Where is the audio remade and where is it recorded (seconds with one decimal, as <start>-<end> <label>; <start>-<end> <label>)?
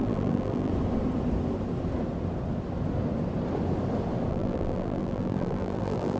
0.0-0.7 remade; 0.7-4.3 recorded; 4.3-6.2 remade